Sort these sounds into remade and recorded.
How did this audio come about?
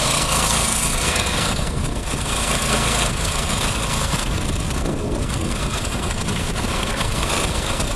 remade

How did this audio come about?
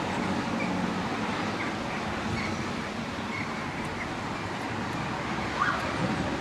recorded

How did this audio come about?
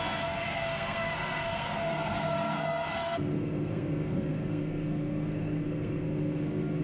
remade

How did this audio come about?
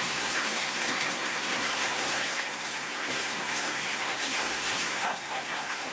remade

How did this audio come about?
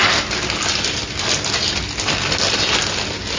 recorded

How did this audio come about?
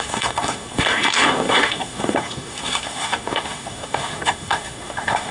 remade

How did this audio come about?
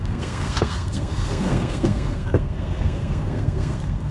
remade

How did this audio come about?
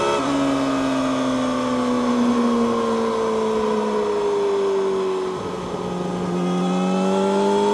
recorded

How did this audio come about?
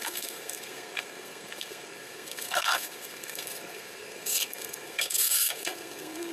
remade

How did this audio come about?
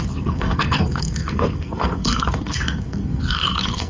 remade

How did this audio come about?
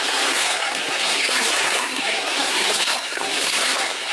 remade